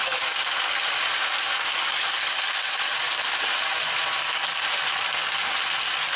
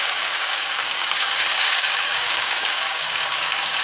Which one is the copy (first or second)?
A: second